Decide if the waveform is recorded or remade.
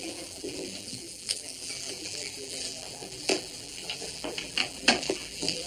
remade